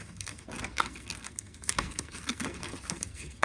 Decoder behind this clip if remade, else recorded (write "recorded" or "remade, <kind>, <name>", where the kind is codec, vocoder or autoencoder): remade, codec, SNAC